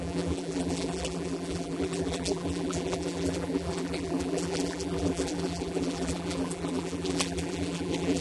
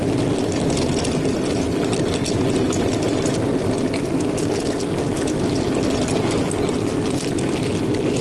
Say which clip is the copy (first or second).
first